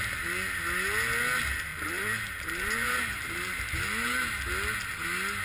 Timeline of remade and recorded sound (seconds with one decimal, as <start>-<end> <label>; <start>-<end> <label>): 0.0-1.7 recorded; 1.7-4.2 remade; 4.2-5.4 recorded